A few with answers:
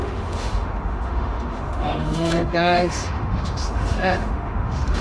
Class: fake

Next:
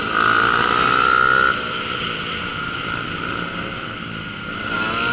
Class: real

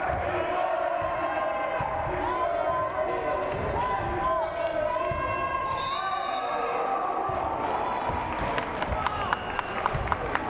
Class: real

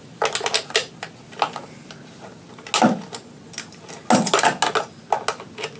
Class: real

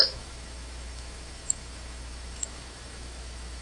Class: fake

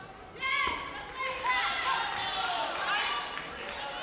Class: real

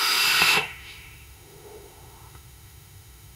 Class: fake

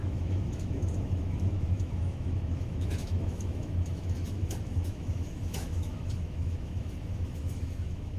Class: fake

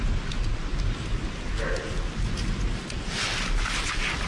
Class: real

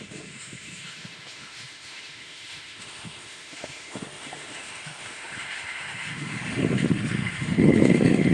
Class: fake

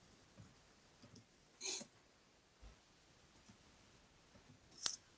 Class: real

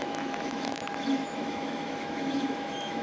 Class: fake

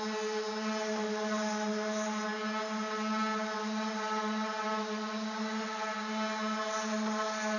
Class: real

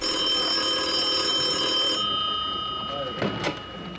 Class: real